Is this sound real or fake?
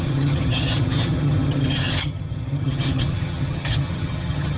fake